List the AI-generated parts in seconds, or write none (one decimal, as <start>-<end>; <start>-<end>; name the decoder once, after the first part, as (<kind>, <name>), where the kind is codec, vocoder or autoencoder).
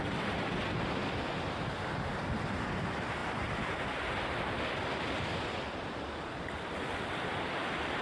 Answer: none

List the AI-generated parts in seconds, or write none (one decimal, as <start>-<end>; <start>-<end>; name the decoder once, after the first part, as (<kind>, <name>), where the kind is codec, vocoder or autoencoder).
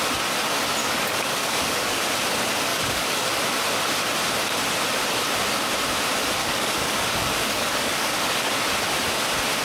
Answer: 0.8-2.0 (codec, DAC); 2.7-3.3; 6.4-8.5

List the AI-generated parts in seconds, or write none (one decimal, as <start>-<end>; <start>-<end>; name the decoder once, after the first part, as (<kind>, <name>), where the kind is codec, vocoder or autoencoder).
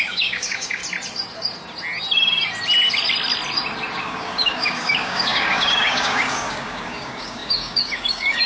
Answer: 0.0-0.8 (codec, DAC); 4.0-8.5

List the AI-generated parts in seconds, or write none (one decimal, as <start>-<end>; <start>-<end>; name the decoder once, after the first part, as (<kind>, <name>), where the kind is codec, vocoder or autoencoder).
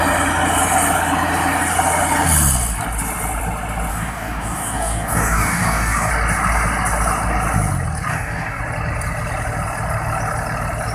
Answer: 3.9-6.1 (codec, DAC); 8.1-8.6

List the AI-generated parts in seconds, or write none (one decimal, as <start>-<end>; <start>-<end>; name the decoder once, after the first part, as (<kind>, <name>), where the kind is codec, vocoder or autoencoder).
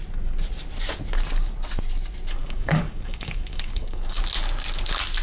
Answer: 2.4-4.2 (codec, DAC)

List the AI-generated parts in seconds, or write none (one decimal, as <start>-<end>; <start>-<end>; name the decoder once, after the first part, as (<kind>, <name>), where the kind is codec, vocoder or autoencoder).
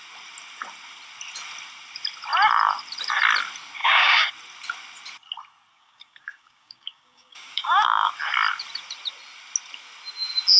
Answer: 3.8-4.3 (codec, DAC); 5.7-8.1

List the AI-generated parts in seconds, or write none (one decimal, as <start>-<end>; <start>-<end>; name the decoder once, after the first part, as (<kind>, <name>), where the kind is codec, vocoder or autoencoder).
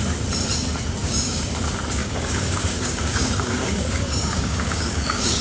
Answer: 1.0-1.5 (codec, DAC); 2.0-5.4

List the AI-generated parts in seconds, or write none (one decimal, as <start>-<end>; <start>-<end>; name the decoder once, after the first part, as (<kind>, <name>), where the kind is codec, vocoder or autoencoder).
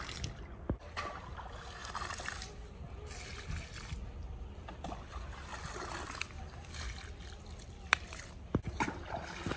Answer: none